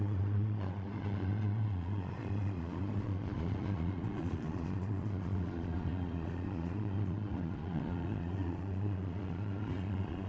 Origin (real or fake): fake